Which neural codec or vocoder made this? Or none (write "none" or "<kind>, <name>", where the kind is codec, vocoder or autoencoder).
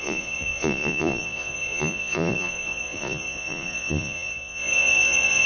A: vocoder, Vocos